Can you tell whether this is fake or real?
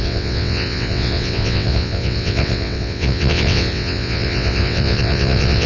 fake